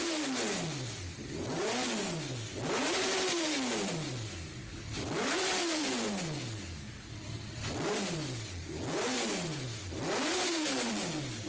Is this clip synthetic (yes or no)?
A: no